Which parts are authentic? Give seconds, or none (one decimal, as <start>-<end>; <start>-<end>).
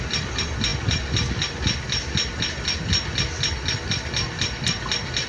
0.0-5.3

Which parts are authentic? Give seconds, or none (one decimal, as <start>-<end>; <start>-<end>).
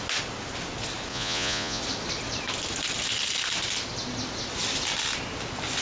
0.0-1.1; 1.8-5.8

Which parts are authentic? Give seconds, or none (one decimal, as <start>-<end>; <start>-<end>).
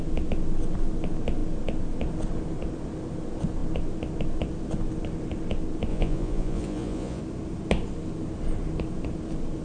0.0-5.9; 7.2-9.6